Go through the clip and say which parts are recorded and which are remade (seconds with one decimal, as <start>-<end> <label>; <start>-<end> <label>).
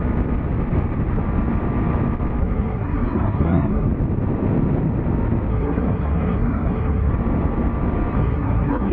0.0-2.4 recorded; 2.4-3.9 remade; 3.9-5.5 recorded; 5.5-7.1 remade; 7.1-8.1 recorded; 8.1-8.9 remade